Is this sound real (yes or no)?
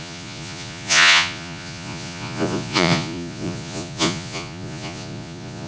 no